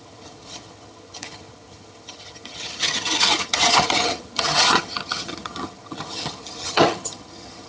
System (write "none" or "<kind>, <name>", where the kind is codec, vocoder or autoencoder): vocoder, HiFi-GAN